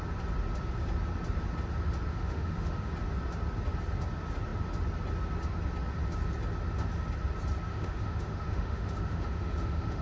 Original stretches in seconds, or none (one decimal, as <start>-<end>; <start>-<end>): 0.0-2.1; 2.9-7.7

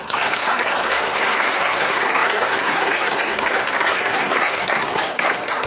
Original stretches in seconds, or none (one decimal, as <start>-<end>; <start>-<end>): none

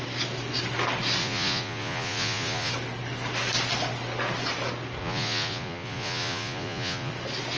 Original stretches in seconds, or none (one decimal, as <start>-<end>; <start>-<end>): 0.0-1.2; 2.7-5.0; 7.1-7.6